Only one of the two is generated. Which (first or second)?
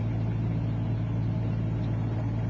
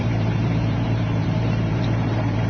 second